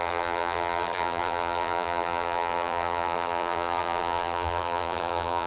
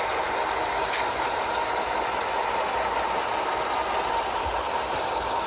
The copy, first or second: first